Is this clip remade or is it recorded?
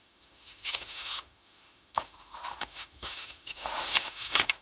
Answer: remade